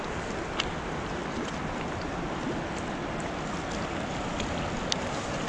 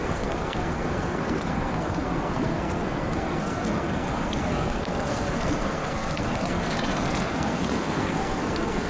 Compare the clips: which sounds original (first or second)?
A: first